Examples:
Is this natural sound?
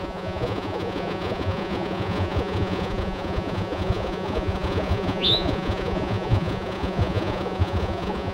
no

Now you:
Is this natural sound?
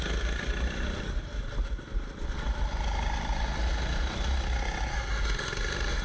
yes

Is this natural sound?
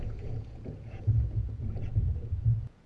no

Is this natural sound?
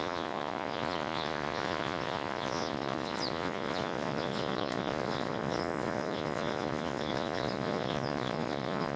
no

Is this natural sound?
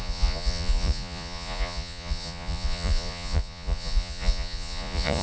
no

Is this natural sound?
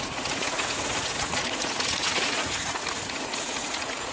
no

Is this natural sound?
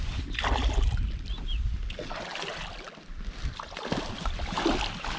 yes